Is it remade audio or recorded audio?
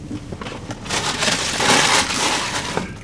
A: recorded